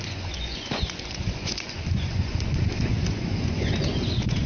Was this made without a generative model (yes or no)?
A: no